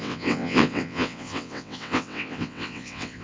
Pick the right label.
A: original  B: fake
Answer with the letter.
B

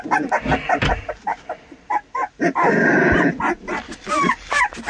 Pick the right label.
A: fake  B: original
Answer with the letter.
B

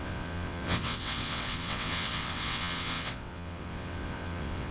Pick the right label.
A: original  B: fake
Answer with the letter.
B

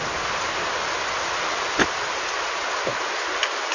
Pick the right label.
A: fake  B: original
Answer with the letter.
B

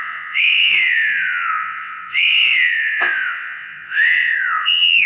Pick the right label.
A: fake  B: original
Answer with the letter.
A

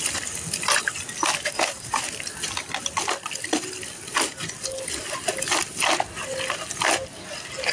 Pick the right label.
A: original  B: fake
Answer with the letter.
A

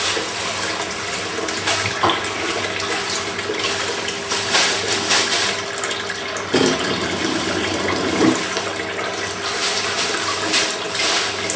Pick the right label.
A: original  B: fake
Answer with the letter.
A